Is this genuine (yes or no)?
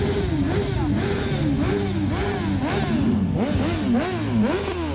yes